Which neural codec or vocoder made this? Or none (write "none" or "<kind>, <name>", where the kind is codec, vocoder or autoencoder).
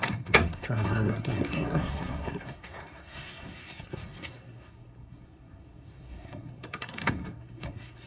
codec, SNAC